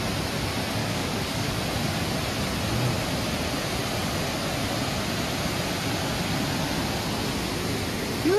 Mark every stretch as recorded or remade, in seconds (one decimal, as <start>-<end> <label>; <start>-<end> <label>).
0.0-0.8 recorded; 0.8-1.6 remade; 1.6-8.4 recorded